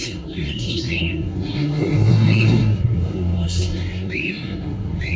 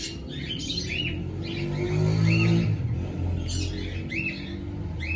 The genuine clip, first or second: second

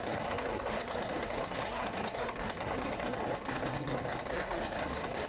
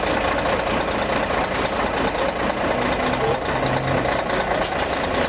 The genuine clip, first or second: second